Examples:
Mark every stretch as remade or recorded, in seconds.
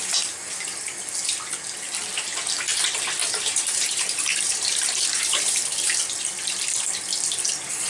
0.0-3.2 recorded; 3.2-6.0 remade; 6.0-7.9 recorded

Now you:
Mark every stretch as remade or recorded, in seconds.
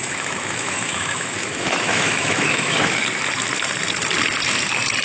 0.0-3.0 remade; 3.0-5.0 recorded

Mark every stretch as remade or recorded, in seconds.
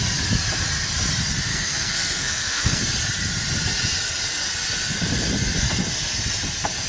0.0-1.5 recorded; 1.5-2.8 remade; 2.8-6.9 recorded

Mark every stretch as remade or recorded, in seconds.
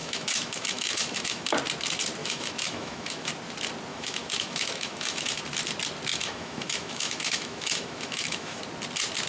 0.0-1.5 remade; 1.5-2.2 recorded; 2.2-3.3 remade; 3.3-3.9 recorded; 3.9-5.4 remade; 5.4-6.1 recorded; 6.1-8.6 remade; 8.6-9.3 recorded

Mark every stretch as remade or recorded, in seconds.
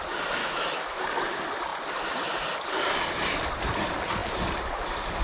0.0-0.4 recorded; 0.4-1.0 remade; 1.0-5.2 recorded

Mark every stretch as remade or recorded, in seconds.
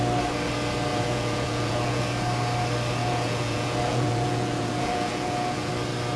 0.0-0.9 recorded; 0.9-2.0 remade; 2.0-3.0 recorded; 3.0-5.7 remade; 5.7-6.2 recorded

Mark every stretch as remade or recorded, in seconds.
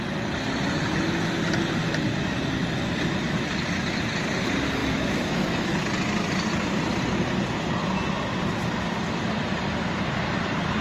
0.0-4.8 recorded; 4.8-5.8 remade; 5.8-10.8 recorded